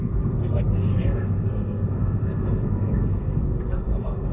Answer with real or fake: fake